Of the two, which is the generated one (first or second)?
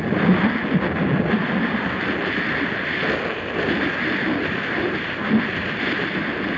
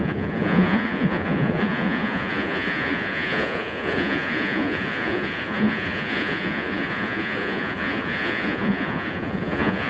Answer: second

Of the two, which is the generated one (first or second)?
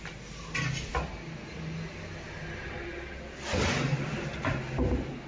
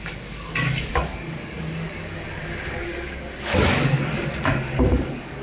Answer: second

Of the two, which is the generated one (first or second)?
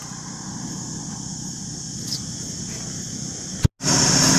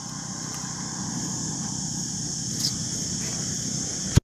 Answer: second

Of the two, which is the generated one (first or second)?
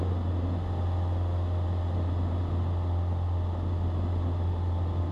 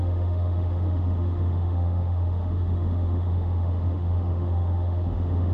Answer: second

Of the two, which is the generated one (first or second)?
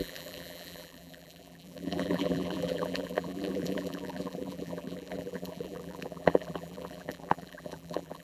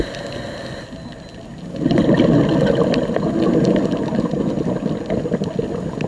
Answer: first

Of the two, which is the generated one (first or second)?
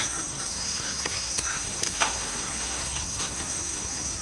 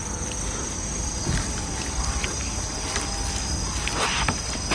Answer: first